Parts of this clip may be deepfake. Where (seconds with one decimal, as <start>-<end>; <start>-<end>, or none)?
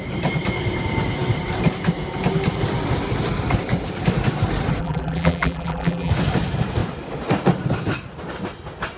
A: 4.8-6.1